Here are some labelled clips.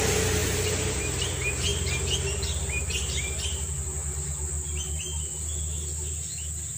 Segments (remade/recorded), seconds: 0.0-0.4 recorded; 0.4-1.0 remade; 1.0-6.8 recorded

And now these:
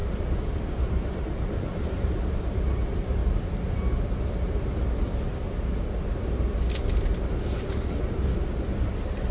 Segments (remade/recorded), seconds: 0.0-0.7 recorded; 0.7-3.2 remade; 3.2-7.3 recorded; 7.3-8.3 remade; 8.3-9.3 recorded